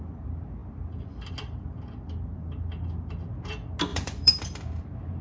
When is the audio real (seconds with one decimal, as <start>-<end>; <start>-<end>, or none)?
0.0-3.9; 4.6-5.2

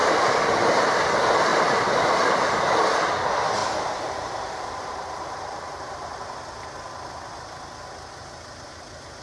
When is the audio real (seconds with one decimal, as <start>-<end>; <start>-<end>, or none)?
0.9-1.5; 2.6-3.6; 6.3-9.2

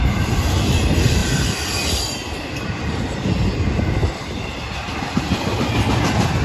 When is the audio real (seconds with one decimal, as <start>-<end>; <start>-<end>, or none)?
none

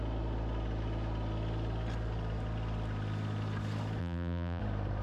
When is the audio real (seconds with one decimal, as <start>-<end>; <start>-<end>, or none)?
0.0-4.0; 4.6-5.0

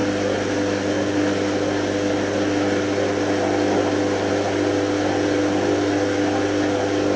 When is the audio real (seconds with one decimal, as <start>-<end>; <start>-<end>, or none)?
0.0-7.2

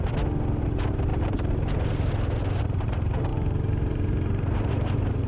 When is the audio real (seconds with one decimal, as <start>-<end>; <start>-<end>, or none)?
0.0-1.1; 2.1-3.3